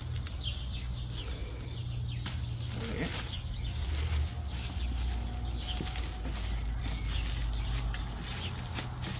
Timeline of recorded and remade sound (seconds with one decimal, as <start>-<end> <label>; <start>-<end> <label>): 0.0-9.2 recorded